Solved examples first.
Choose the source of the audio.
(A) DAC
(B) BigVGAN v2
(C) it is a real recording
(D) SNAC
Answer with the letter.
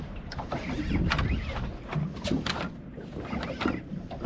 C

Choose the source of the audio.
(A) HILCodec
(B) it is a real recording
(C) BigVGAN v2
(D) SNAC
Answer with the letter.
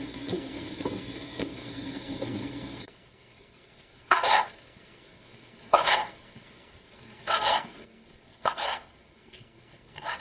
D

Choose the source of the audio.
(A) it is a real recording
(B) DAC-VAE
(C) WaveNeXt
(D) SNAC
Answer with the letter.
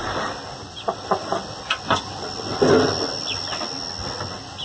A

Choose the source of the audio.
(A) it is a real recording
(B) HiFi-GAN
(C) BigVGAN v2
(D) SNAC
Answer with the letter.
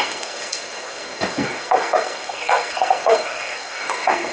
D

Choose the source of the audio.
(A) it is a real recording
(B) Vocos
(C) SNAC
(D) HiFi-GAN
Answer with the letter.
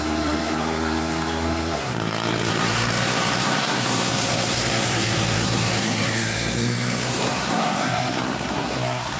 C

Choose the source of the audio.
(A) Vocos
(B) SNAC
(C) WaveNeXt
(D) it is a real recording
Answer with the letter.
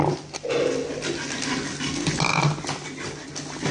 D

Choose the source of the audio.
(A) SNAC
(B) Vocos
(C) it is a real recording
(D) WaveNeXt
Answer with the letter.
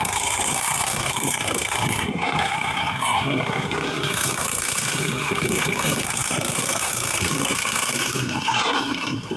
A